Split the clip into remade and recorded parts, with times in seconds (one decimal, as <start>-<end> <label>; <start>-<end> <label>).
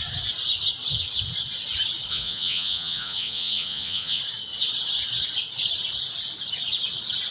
0.0-2.1 recorded; 2.1-4.2 remade; 4.2-7.3 recorded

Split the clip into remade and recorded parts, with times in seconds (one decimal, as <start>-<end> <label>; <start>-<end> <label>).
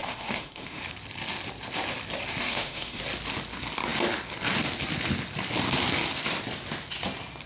0.0-0.8 remade; 0.8-2.4 recorded; 2.4-3.0 remade; 3.0-7.5 recorded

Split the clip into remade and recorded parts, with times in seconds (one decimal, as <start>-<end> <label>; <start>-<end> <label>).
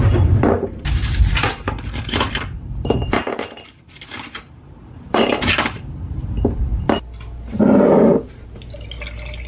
0.0-6.7 remade; 6.7-9.5 recorded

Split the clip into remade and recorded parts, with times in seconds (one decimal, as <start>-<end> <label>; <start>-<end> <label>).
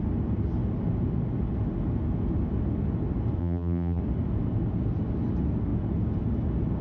0.0-3.4 recorded; 3.4-4.0 remade; 4.0-6.8 recorded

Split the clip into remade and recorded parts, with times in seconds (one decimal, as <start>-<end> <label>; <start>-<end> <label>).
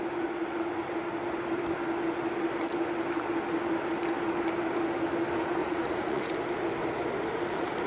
0.0-5.6 recorded; 5.6-6.3 remade; 6.3-7.9 recorded